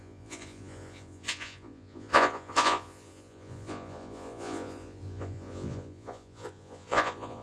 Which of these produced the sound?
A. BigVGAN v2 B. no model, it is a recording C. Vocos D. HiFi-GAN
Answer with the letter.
C